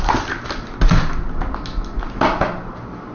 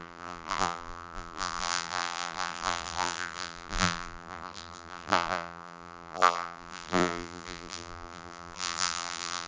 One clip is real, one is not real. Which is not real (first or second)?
second